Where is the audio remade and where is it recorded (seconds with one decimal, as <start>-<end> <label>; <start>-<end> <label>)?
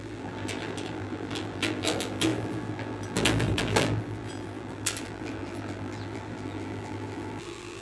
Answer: 0.0-7.8 remade